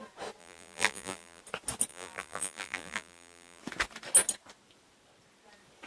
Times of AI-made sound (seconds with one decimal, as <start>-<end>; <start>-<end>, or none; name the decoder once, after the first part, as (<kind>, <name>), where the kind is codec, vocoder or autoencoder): 0.4-1.4 (vocoder, BigVGAN v2); 1.9-3.6